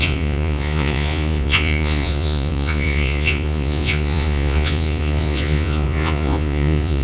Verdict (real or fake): fake